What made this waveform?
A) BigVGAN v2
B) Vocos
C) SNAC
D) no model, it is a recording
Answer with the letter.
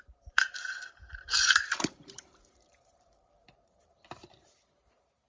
A